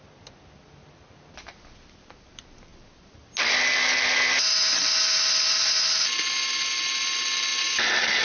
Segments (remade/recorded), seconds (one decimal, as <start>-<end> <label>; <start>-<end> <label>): 0.0-8.2 recorded